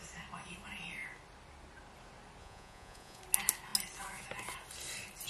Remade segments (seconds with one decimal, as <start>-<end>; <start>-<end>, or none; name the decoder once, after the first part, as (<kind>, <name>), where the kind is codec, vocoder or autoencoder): 2.4-3.2 (vocoder, Vocos)